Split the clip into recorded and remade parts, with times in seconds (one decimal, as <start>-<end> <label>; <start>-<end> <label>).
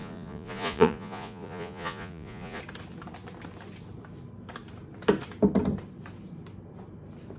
0.0-2.6 remade; 2.6-7.4 recorded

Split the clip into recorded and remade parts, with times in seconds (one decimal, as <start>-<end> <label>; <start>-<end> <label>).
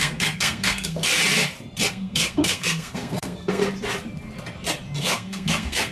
0.0-1.1 remade; 1.1-1.9 recorded; 1.9-3.6 remade; 3.6-5.0 recorded; 5.0-5.9 remade